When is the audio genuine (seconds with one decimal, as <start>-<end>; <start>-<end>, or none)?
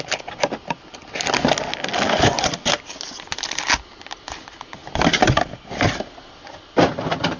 0.0-7.4